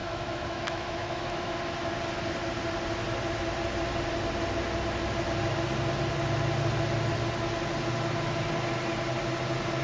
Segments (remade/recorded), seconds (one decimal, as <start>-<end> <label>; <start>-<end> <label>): 0.0-1.6 remade; 1.6-9.8 recorded